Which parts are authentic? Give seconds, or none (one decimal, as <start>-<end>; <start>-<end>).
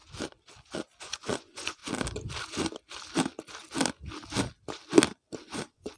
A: 0.0-1.0; 1.8-5.4